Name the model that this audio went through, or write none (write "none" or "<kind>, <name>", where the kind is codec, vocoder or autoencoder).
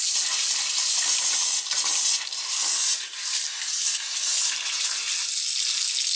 none